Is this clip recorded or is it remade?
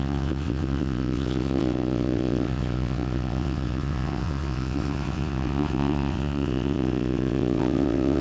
remade